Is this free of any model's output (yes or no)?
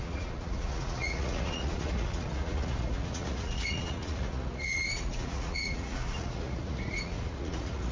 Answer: no